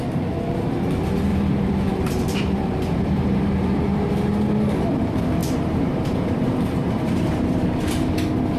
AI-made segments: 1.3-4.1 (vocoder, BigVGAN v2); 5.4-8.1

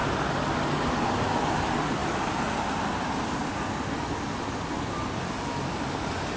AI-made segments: none

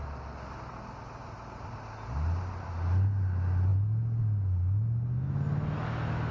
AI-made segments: none

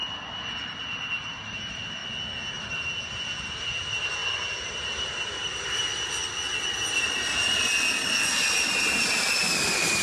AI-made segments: 0.0-2.0 (vocoder, BigVGAN v2); 2.6-4.2; 4.7-6.2; 8.8-10.0